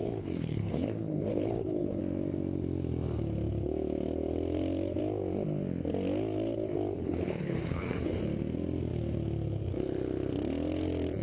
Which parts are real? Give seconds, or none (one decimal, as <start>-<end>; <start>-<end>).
2.0-7.0; 8.2-11.2